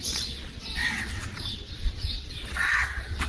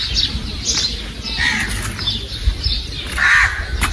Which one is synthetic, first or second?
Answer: first